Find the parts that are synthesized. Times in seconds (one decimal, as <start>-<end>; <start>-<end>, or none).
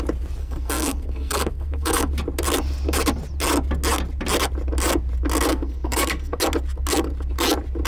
0.4-2.1; 5.5-6.4